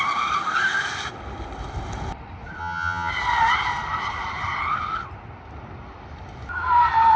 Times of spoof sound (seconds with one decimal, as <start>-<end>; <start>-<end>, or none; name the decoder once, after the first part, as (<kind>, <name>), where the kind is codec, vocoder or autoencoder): 2.6-3.1 (vocoder, HiFi-GAN)